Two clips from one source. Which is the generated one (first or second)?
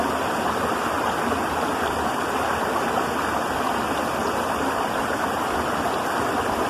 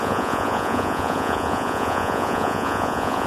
second